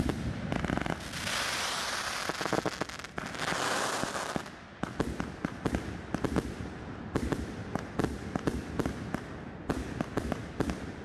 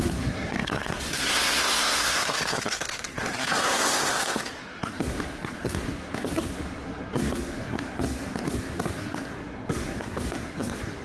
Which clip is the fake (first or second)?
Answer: second